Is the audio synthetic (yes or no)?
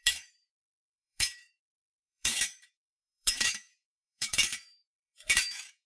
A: yes